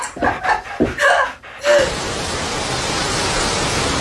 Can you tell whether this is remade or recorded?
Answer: recorded